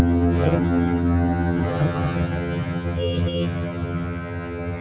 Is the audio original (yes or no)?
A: no